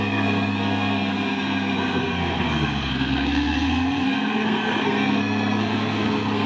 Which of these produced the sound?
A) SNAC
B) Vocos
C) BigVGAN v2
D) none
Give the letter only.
A